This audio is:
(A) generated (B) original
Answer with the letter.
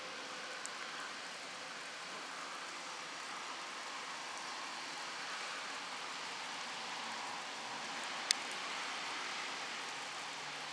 B